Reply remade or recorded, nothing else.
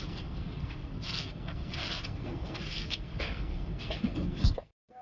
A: remade